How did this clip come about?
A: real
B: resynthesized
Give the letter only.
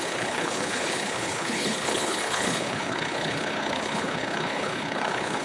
B